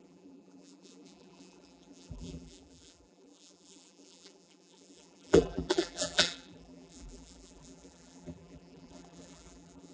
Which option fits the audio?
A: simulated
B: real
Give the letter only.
A